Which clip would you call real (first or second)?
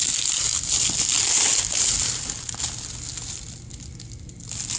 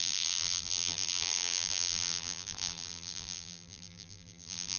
first